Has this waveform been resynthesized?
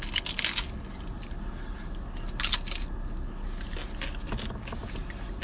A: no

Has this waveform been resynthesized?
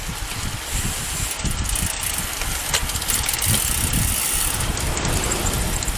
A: no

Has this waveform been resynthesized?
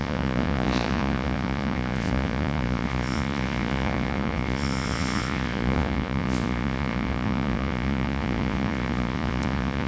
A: yes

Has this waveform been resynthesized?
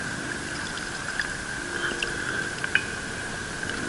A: no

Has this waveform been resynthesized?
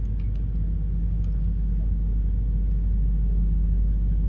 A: no